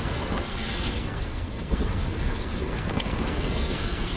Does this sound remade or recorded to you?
remade